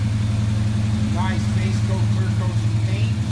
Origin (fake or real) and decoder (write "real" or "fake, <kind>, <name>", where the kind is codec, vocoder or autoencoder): real